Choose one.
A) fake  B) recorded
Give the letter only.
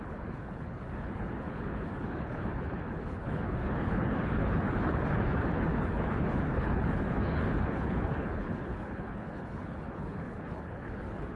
A